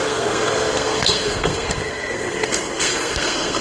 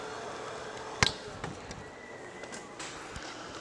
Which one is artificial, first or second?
first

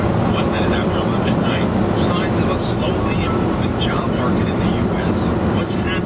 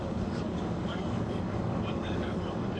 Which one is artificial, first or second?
second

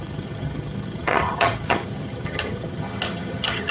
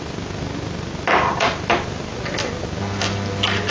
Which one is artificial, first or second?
first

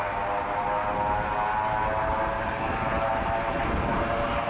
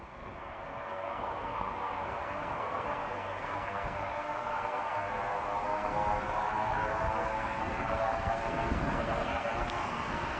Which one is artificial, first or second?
second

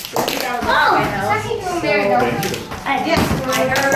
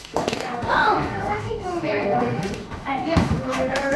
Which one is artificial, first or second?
second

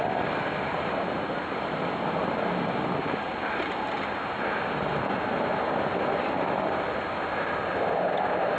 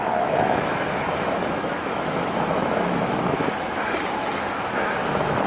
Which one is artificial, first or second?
second